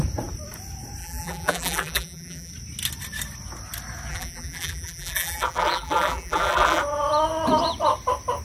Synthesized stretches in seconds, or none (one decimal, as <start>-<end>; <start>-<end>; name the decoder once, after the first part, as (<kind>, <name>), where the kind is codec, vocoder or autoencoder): 1.0-2.5 (vocoder, BigVGAN v2); 4.1-6.8